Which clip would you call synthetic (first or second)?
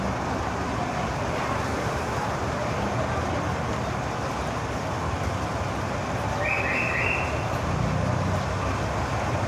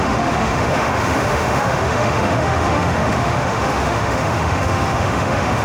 second